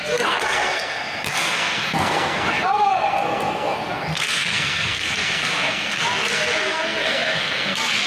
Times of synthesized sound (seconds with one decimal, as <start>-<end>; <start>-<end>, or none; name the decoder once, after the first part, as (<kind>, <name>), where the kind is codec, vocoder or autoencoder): 0.0-8.1 (codec, SNAC)